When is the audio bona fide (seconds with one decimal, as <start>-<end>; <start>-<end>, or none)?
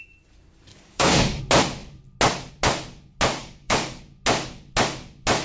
0.0-0.7; 1.4-3.4; 4.0-5.4